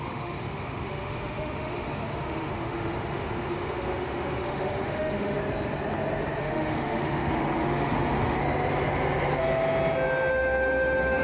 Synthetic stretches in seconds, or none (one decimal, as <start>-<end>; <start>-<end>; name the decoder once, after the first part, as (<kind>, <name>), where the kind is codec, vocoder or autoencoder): 0.0-5.4 (autoencoder, DAC-VAE); 6.4-8.4; 10.3-11.2